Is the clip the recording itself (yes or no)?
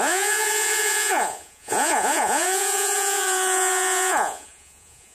no